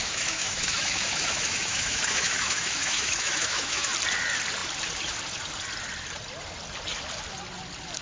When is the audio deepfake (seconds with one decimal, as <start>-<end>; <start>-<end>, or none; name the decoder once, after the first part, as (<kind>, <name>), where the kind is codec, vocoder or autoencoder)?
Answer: 0.0-3.9 (autoencoder, DAC-VAE)